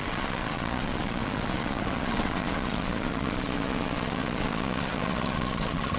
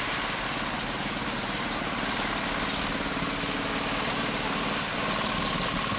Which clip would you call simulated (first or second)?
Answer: first